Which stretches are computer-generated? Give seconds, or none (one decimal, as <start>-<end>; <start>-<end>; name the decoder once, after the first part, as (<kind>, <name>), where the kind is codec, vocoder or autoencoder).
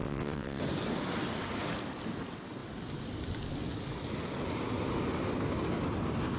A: 0.0-0.6 (vocoder, WaveNeXt)